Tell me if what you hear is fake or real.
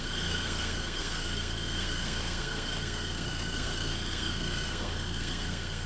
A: fake